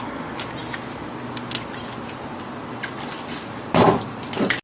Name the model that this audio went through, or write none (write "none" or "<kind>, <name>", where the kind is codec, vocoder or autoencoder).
none